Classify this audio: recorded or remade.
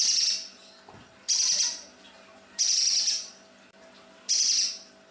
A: recorded